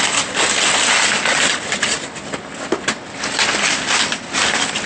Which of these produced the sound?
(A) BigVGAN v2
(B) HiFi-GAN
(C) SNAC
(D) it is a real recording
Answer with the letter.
D